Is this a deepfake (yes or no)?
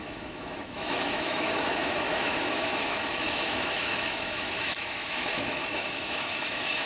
yes